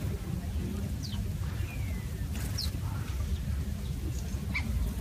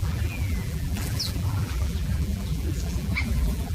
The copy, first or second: second